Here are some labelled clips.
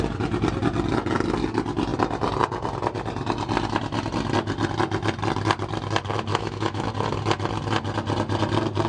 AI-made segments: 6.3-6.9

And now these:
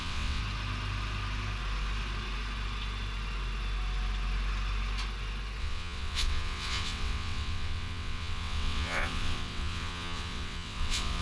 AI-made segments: 0.0-0.4; 5.6-11.2